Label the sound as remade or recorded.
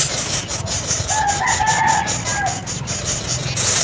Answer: recorded